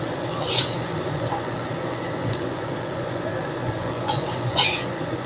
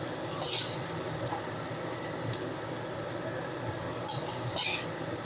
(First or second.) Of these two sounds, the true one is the second